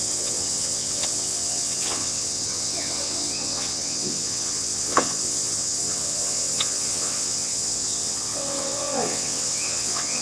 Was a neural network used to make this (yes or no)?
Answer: yes